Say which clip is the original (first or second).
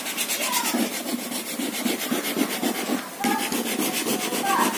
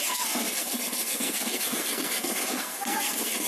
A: first